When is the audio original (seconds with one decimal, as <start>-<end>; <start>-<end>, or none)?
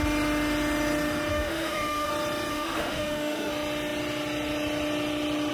0.0-1.3; 2.1-2.5; 3.5-5.5